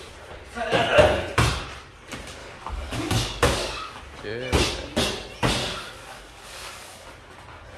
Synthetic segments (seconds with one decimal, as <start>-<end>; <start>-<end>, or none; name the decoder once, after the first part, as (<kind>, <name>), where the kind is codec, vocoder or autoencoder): 2.4-4.0 (codec, DAC); 5.6-7.1